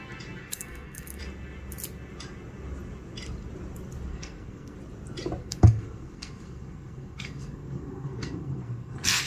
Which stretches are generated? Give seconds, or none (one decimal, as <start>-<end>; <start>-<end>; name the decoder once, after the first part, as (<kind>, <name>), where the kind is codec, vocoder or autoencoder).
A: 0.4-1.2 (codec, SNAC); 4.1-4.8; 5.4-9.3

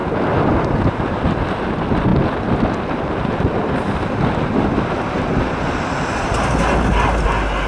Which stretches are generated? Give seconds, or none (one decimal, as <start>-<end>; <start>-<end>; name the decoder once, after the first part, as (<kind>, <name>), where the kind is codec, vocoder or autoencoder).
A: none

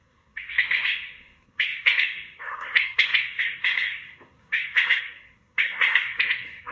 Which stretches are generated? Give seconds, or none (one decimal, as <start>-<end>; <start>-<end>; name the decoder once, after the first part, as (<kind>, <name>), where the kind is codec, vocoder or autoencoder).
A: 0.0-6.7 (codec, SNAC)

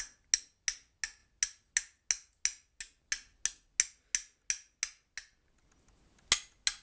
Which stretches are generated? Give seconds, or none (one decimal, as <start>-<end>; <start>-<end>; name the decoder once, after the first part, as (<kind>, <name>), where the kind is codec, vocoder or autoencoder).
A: none

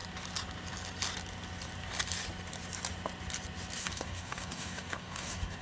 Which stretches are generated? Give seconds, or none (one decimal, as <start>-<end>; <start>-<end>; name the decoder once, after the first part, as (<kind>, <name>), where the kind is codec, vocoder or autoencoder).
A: 3.8-5.6 (codec, DAC)

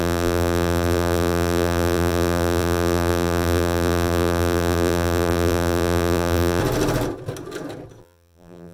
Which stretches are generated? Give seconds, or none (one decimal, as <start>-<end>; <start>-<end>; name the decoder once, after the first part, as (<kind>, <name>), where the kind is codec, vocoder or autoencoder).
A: 0.0-6.6 (vocoder, BigVGAN v2); 8.0-8.7

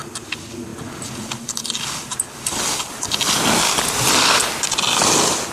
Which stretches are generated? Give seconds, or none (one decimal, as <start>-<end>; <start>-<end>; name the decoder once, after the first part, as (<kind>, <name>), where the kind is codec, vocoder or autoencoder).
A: none

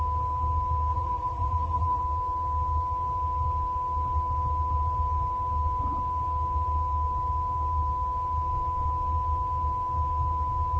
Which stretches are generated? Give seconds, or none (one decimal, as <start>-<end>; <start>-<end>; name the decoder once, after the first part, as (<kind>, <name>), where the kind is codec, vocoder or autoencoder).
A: 0.9-2.0 (vocoder, Vocos)